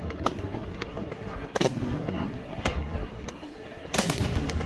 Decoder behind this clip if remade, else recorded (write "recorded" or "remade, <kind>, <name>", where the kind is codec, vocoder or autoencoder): remade, codec, SNAC